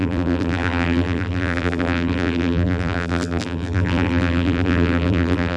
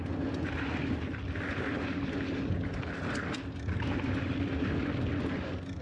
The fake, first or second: first